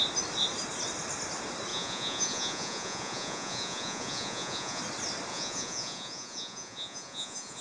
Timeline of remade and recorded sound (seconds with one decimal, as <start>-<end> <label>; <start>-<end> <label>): 0.0-1.7 recorded; 1.7-4.8 remade; 4.8-5.3 recorded; 5.3-7.6 remade